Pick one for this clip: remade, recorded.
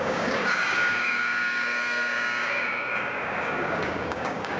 remade